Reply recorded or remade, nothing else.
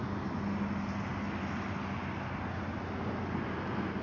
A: recorded